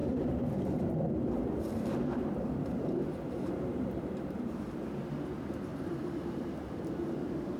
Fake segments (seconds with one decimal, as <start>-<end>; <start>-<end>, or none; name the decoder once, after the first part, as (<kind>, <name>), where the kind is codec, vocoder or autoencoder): 0.0-4.6 (vocoder, BigVGAN v2); 5.7-7.6